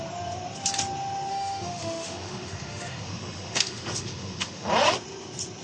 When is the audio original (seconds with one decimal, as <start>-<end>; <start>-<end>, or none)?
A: 0.0-1.3; 4.7-5.6